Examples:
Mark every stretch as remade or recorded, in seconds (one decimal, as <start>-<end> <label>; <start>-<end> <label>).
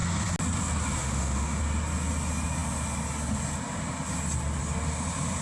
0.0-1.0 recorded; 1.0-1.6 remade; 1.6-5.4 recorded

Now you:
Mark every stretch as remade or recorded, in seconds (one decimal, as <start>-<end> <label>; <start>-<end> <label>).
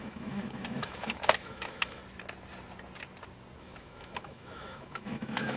0.0-2.0 remade; 2.0-3.6 recorded; 3.6-5.6 remade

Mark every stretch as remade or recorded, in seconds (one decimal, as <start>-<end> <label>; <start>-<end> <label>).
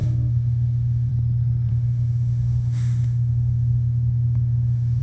0.0-1.1 remade; 1.1-1.7 recorded; 1.7-5.0 remade